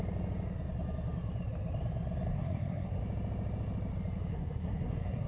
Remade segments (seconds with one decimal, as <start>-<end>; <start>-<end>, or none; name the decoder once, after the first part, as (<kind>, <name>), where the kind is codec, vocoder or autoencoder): 2.3-3.0 (codec, SNAC); 4.3-5.3